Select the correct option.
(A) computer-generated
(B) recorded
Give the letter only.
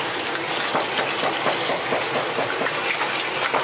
B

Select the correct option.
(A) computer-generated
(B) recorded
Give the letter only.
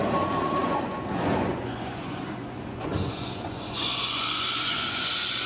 A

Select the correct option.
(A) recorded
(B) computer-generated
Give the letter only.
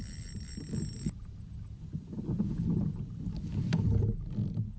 A